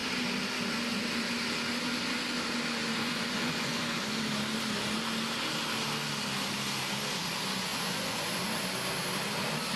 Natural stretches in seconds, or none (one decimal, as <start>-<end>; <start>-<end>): 0.0-3.0; 4.2-7.7; 8.4-9.8